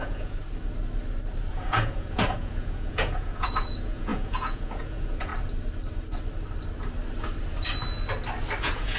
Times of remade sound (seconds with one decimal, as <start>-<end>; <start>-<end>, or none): 0.0-0.4; 1.5-5.3; 8.6-9.0